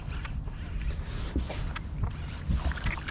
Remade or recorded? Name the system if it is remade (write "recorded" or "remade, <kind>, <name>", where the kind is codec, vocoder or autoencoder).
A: recorded